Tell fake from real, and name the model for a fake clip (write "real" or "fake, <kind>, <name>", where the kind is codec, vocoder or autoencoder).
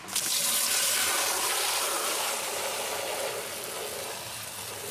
real